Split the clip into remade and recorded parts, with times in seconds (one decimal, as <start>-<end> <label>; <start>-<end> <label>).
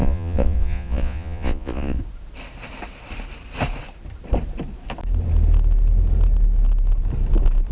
0.0-2.0 remade; 2.0-7.7 recorded